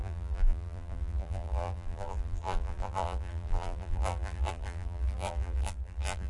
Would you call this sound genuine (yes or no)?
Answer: no